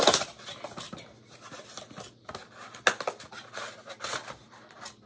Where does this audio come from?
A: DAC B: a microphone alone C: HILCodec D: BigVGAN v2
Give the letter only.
B